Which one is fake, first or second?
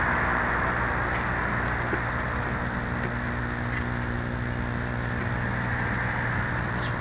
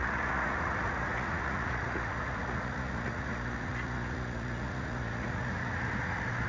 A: second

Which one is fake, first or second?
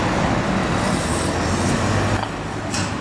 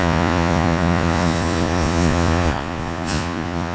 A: second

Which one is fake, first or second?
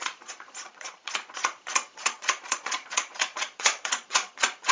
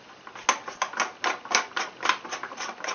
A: first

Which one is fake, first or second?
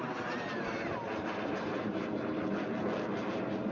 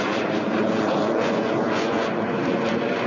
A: second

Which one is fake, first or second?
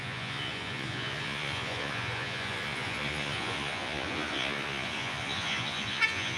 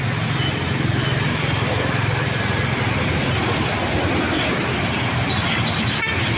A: first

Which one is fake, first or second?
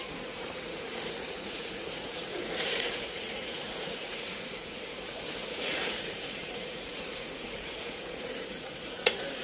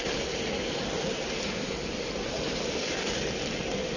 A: first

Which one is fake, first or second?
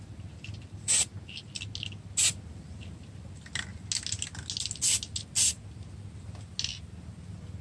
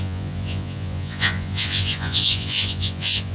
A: second